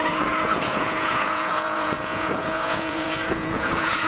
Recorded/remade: remade